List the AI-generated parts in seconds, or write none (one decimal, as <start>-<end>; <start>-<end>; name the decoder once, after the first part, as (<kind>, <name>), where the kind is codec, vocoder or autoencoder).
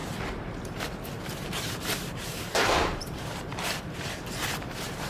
0.0-5.1 (vocoder, BigVGAN v2)